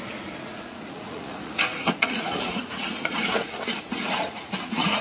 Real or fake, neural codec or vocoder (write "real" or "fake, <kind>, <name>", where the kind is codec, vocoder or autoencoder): fake, vocoder, Vocos